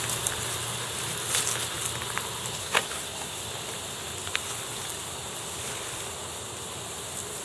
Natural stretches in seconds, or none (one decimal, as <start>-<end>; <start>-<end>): 0.0-2.6; 3.4-7.4